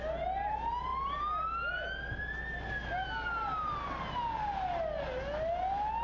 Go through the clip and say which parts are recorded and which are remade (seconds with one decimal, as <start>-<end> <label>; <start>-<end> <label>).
0.0-6.0 recorded